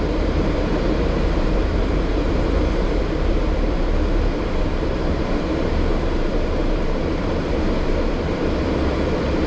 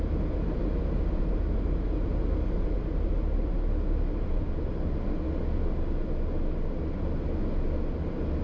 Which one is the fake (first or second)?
first